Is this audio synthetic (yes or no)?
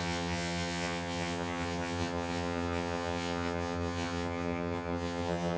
yes